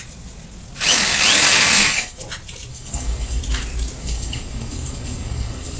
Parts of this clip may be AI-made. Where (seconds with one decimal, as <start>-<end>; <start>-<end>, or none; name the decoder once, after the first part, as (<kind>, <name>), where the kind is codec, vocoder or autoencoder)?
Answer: 1.6-2.2 (codec, SNAC); 2.7-3.4; 4.0-5.8